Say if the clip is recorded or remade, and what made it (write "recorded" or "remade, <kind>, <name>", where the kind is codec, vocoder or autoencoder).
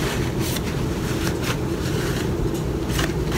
recorded